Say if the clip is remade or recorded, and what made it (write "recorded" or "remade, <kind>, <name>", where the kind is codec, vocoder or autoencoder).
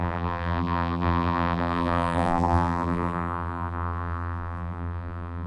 remade, vocoder, BigVGAN v2